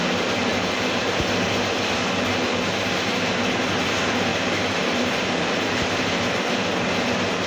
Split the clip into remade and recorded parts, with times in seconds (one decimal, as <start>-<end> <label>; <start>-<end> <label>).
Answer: 0.0-0.5 recorded; 0.5-1.2 remade; 1.2-4.3 recorded; 4.3-6.1 remade; 6.1-7.5 recorded